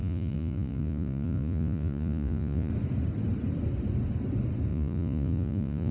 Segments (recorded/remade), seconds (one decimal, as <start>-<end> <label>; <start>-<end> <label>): 0.0-2.7 remade; 2.7-4.7 recorded; 4.7-5.9 remade